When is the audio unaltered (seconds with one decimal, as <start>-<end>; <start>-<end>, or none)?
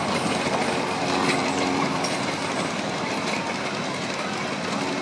0.0-1.4; 2.5-5.0